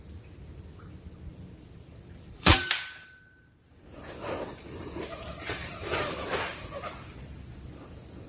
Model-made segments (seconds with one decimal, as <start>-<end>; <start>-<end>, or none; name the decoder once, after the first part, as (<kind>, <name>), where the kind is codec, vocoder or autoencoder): 1.3-2.7 (vocoder, BigVGAN v2); 4.5-6.0